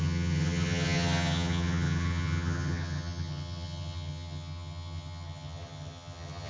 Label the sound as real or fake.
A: fake